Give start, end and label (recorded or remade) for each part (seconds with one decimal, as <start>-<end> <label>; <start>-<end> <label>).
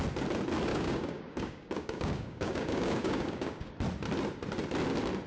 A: 0.0-0.7 recorded; 0.7-3.7 remade; 3.7-5.3 recorded